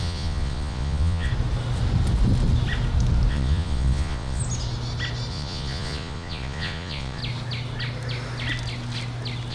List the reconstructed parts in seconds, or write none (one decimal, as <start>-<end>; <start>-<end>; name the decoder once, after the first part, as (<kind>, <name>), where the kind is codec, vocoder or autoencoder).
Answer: 0.0-1.3 (vocoder, Vocos); 3.3-4.4; 5.3-7.2